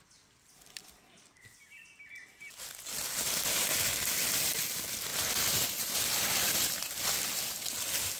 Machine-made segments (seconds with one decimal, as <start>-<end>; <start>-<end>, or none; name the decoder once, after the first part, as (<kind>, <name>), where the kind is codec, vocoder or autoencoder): none